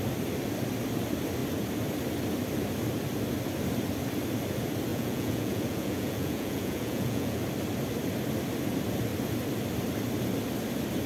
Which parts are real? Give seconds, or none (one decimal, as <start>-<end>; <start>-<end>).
0.0-4.9; 7.4-11.1

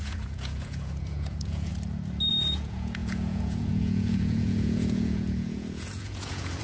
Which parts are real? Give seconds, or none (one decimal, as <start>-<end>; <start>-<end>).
1.7-2.3

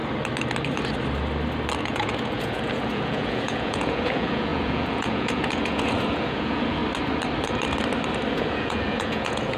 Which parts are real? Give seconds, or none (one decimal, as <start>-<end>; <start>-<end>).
0.0-1.8; 6.8-8.3

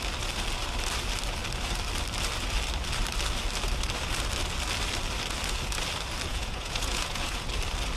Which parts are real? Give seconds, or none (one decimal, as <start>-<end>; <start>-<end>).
0.0-6.3; 7.5-8.0

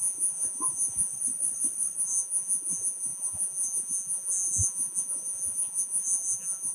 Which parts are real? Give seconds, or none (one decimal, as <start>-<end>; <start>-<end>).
1.1-2.0